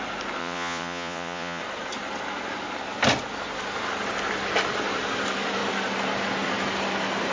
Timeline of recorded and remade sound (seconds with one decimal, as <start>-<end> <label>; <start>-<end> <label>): 0.0-0.4 recorded; 0.4-1.6 remade; 1.6-7.3 recorded